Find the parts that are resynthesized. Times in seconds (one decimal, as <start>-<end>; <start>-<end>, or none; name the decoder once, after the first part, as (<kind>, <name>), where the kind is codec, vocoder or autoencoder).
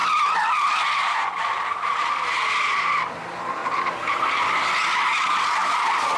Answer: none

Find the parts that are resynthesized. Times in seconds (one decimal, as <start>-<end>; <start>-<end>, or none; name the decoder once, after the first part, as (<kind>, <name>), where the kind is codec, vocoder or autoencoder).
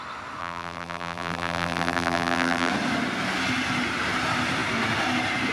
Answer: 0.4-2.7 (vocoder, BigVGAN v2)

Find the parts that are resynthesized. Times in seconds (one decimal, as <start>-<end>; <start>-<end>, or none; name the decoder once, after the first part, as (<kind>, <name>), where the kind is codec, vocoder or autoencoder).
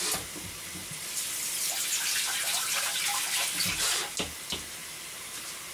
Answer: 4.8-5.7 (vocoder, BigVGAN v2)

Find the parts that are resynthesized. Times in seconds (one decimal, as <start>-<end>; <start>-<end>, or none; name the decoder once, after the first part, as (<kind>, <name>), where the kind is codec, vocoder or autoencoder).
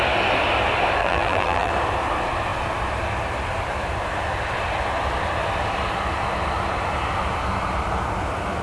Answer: 1.0-1.7 (vocoder, BigVGAN v2)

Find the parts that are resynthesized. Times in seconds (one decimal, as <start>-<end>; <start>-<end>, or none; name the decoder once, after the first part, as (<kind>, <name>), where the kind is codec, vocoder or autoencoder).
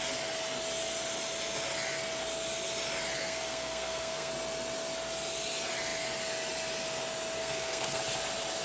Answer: 3.2-4.3 (codec, SNAC); 7.4-8.0